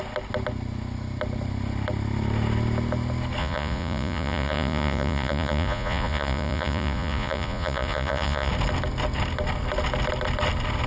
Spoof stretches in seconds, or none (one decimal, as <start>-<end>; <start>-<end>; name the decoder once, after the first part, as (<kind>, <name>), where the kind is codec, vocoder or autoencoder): 3.4-8.5 (vocoder, Vocos)